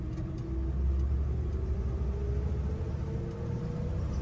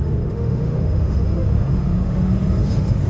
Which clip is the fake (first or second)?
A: second